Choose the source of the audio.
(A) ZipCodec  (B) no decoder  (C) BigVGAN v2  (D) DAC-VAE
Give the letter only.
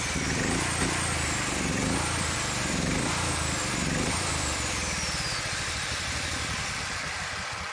C